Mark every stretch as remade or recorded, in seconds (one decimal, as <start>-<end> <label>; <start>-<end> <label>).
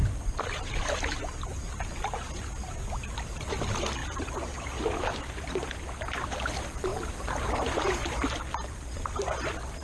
0.0-1.6 remade; 1.6-4.0 recorded; 4.0-5.3 remade; 5.3-6.9 recorded; 6.9-9.2 remade; 9.2-9.8 recorded